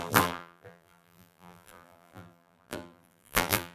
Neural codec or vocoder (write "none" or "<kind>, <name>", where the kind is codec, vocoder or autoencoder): vocoder, BigVGAN v2